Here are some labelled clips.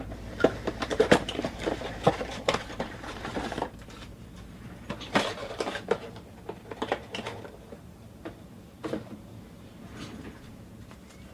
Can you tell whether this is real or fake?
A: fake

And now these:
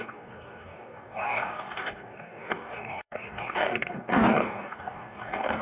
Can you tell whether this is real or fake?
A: fake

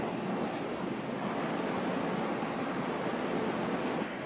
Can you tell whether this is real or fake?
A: real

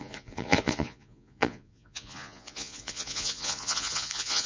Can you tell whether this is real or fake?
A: fake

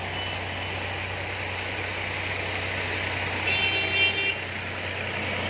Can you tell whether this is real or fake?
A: real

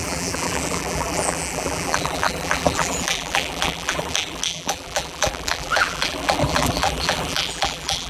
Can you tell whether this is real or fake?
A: fake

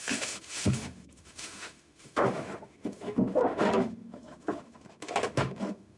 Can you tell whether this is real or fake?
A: fake